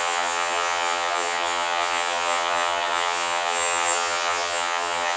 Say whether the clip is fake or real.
fake